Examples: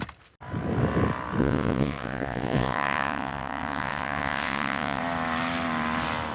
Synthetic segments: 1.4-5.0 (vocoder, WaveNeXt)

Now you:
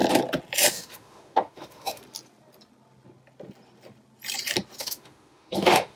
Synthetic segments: 0.7-2.0 (autoencoder, DAC-VAE); 4.8-6.0